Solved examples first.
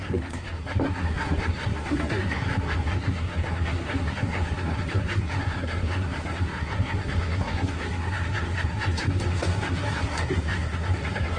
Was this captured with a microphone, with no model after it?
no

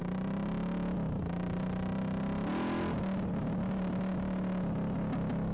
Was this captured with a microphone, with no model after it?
yes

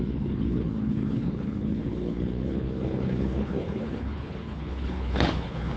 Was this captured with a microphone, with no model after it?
no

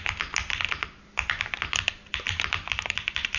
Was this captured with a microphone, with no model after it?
yes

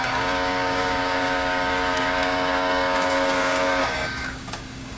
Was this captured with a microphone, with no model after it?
no